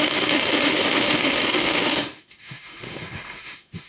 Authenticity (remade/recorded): remade